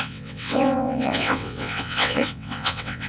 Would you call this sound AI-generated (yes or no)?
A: yes